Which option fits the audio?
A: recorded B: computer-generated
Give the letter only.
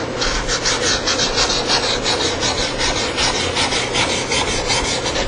A